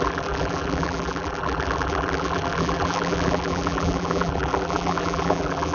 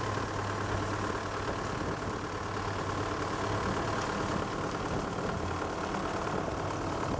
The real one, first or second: second